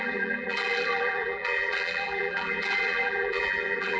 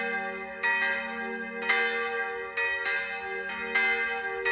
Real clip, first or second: second